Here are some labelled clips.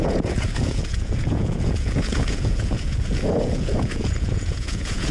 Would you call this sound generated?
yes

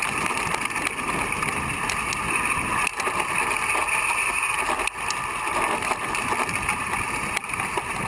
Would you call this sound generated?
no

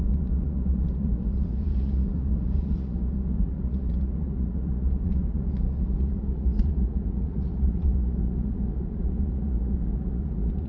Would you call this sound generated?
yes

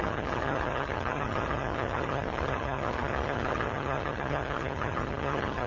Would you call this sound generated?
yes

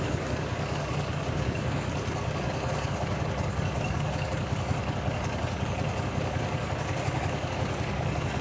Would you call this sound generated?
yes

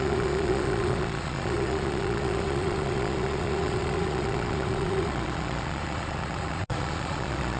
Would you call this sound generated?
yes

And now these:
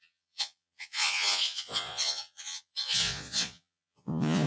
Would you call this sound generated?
yes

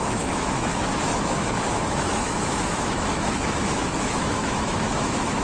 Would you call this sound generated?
yes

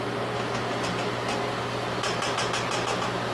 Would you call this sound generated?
no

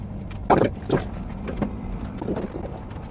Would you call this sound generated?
yes